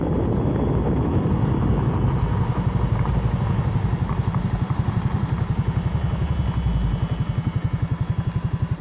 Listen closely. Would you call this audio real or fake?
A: real